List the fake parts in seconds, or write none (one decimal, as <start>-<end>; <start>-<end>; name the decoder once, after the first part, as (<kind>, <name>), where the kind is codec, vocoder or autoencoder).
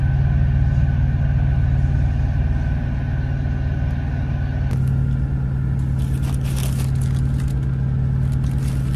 none